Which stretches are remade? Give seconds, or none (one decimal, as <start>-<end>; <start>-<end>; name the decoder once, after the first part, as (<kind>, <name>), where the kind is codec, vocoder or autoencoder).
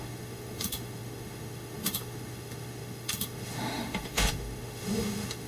0.0-5.5 (autoencoder, DAC-VAE)